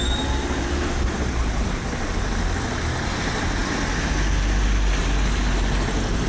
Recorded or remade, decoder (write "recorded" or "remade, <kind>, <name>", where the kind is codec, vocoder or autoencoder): recorded